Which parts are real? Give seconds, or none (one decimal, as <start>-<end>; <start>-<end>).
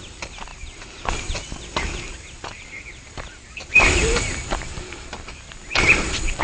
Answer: 0.0-6.4